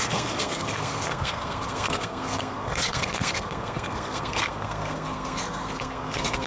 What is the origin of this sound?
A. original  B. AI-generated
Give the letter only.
B